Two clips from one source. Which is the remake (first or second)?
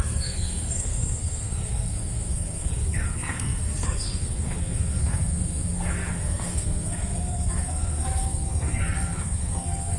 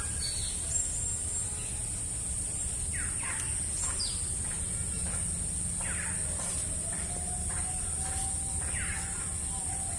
first